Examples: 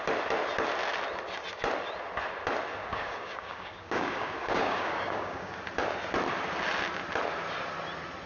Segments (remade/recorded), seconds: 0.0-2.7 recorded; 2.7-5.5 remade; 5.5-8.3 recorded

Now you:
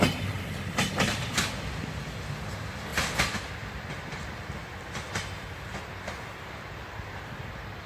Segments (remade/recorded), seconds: 0.0-7.9 recorded

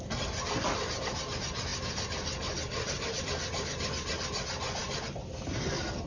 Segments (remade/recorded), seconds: 0.0-6.1 recorded

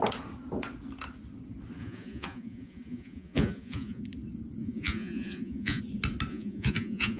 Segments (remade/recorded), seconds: 0.0-1.8 recorded; 1.8-4.0 remade; 4.0-4.6 recorded; 4.6-5.8 remade; 5.8-6.3 recorded; 6.3-7.2 remade